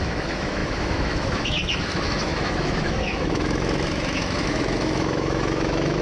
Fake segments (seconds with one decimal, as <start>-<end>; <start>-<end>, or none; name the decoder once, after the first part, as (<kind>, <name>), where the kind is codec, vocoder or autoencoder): 0.0-6.0 (autoencoder, DAC-VAE)